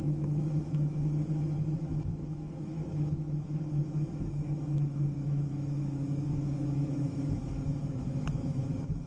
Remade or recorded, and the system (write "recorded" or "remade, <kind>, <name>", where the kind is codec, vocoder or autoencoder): remade, autoencoder, DAC-VAE